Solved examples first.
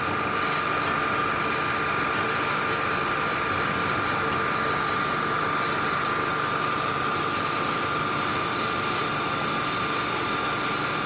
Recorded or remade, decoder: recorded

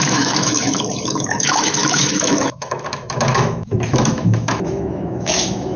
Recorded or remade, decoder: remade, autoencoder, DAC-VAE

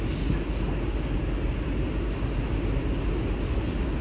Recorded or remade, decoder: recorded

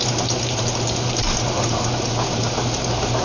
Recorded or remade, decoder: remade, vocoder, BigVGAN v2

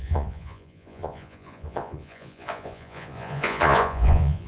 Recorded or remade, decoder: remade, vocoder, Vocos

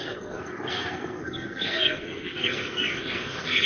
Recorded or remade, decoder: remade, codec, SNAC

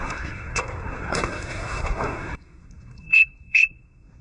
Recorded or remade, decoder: remade, codec, SNAC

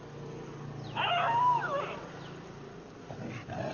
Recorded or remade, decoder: recorded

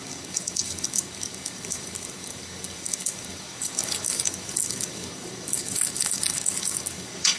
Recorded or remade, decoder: remade, codec, DAC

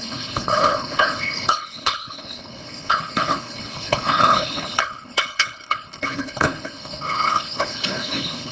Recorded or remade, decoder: remade, codec, HILCodec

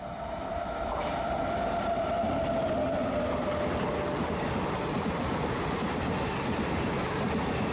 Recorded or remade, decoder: recorded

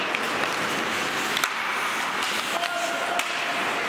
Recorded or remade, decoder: recorded